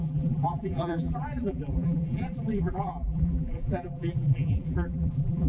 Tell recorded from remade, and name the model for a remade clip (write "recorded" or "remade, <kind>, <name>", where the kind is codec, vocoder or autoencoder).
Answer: remade, vocoder, BigVGAN v2